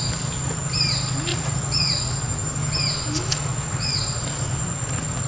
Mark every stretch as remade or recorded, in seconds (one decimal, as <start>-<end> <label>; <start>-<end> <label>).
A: 0.0-1.3 recorded; 1.3-2.2 remade; 2.2-5.3 recorded